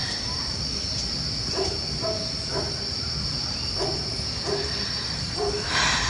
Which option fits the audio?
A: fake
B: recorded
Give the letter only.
B